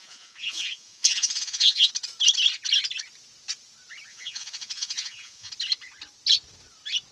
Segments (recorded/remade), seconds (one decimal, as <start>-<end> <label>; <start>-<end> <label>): 0.0-1.9 remade; 1.9-4.1 recorded; 4.1-5.5 remade; 5.5-7.1 recorded

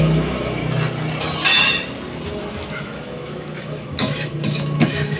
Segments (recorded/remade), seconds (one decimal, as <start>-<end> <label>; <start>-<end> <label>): 0.0-0.6 remade; 0.6-2.4 recorded; 2.4-5.2 remade

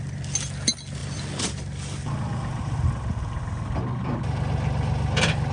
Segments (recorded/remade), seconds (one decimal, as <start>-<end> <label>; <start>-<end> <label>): 0.0-5.5 recorded

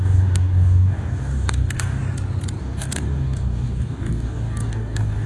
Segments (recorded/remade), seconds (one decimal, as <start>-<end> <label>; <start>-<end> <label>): 0.0-2.0 remade; 2.0-2.6 recorded; 2.6-5.3 remade

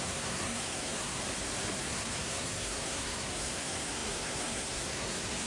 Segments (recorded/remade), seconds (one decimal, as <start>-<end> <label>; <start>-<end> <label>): 0.0-1.2 remade; 1.2-1.8 recorded; 1.8-5.5 remade

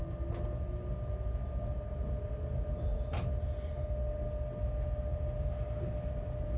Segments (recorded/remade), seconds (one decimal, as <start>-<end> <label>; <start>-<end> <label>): 0.0-6.6 recorded

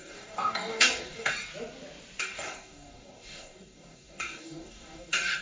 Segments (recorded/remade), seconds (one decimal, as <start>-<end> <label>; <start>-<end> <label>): 0.0-1.3 remade; 1.3-2.2 recorded; 2.2-5.4 remade